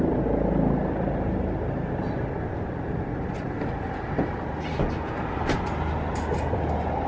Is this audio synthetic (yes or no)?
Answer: no